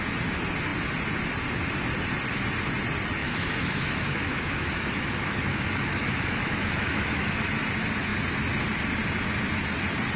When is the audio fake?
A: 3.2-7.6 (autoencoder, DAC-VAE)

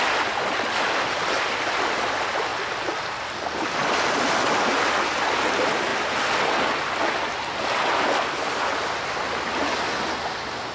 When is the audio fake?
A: none

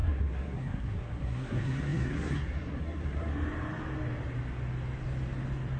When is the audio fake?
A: 0.0-3.3 (codec, SNAC)

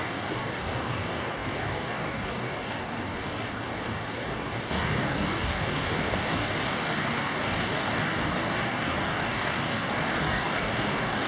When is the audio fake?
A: 0.0-11.3 (codec, DAC)

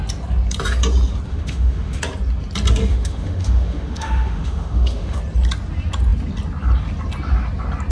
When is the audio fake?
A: 1.3-2.0 (autoencoder, DAC-VAE); 2.9-5.2

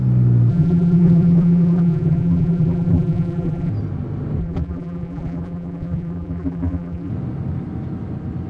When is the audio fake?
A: 0.5-3.7 (vocoder, BigVGAN v2); 4.4-7.1